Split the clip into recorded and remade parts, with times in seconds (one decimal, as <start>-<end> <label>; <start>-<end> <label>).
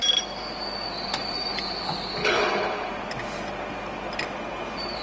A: 0.0-2.2 recorded; 2.2-2.9 remade; 2.9-5.0 recorded